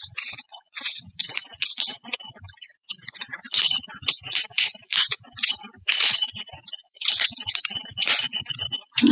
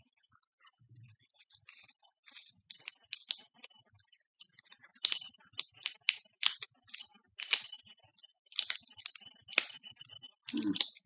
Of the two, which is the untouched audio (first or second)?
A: second